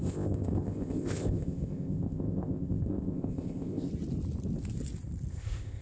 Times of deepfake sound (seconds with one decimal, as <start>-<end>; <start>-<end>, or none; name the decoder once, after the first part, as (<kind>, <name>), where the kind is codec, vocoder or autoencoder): 0.0-3.9 (codec, ZipCodec); 5.3-5.8